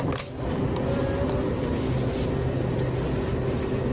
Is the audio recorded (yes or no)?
yes